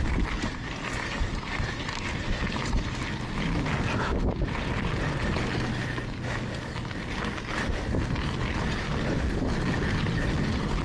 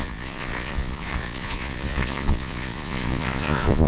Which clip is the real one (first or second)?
first